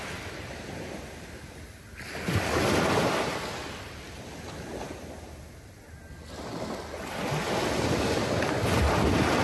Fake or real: real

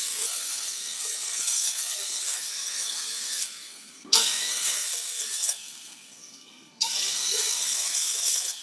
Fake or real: fake